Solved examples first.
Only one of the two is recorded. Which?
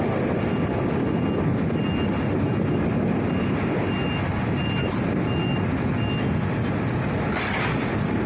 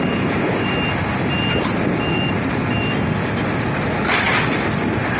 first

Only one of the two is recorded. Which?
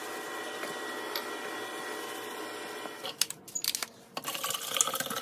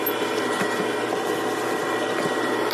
first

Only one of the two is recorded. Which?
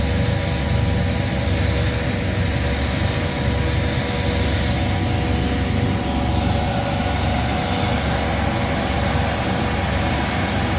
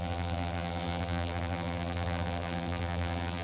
first